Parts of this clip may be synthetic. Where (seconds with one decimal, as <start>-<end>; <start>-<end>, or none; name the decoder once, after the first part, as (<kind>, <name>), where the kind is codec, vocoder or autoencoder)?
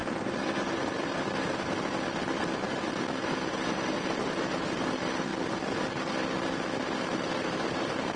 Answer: 0.0-5.3 (vocoder, BigVGAN v2); 7.0-8.2